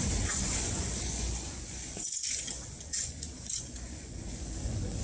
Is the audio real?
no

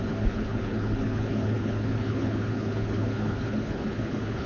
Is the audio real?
no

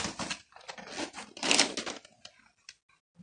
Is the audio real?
yes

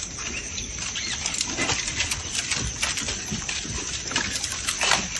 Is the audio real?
yes